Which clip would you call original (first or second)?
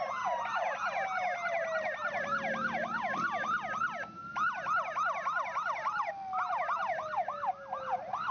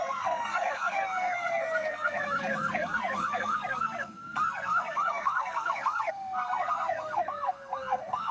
first